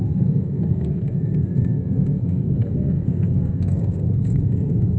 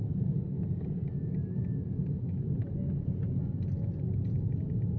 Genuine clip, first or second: second